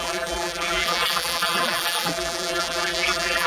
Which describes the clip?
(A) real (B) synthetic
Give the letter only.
B